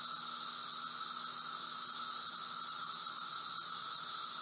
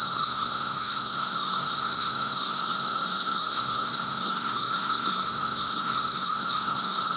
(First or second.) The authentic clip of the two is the first